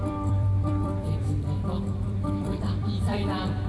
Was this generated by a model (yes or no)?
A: yes